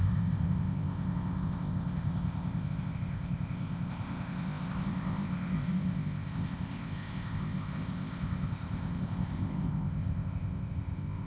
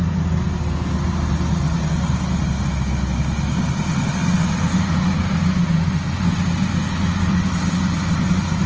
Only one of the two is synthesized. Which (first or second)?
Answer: first